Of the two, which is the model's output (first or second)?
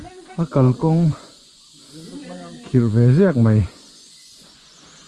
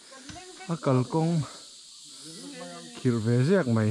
first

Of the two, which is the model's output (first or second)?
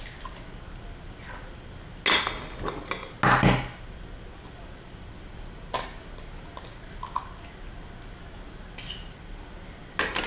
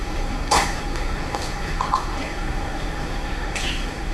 second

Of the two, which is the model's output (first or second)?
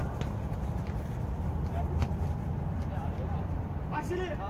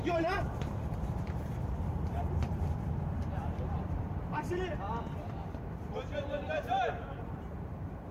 second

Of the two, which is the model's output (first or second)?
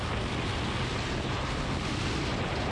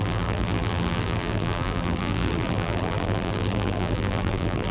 second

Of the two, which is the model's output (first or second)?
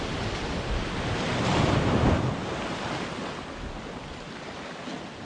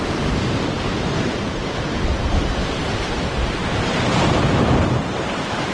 second